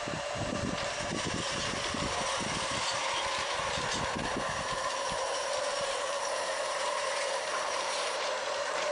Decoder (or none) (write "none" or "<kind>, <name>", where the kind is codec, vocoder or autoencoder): vocoder, BigVGAN v2